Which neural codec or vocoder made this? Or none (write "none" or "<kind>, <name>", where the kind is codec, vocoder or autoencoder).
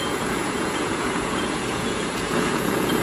vocoder, Vocos